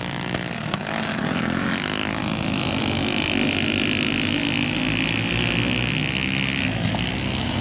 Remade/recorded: recorded